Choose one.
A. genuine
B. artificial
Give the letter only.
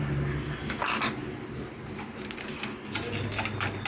A